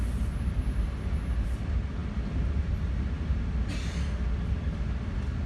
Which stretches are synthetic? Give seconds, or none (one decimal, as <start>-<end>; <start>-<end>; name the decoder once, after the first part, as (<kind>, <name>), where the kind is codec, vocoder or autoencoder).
none